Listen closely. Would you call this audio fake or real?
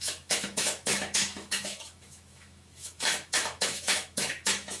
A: fake